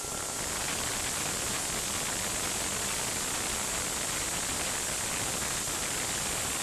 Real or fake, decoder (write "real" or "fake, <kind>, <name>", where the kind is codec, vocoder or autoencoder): real